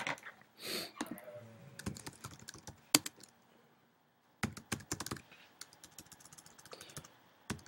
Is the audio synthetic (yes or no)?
no